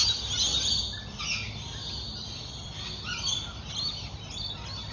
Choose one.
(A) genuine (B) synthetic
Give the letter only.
A